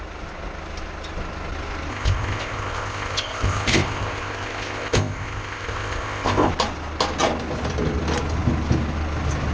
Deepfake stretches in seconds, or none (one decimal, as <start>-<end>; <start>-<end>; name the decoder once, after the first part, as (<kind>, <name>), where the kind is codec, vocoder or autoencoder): 1.9-6.5 (codec, ZipCodec)